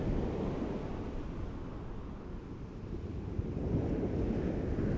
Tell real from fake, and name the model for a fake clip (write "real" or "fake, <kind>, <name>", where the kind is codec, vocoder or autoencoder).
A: real